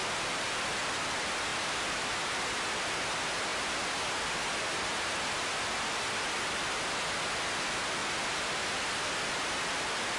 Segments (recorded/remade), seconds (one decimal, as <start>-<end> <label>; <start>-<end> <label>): 0.0-0.9 remade; 0.9-1.5 recorded; 1.5-2.3 remade; 2.3-3.5 recorded; 3.5-5.7 remade; 5.7-8.0 recorded; 8.0-8.5 remade; 8.5-10.2 recorded